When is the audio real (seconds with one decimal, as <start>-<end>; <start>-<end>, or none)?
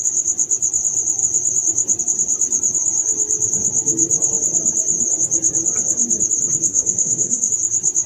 0.0-6.7; 7.5-8.1